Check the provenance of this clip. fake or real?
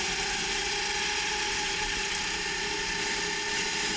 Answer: real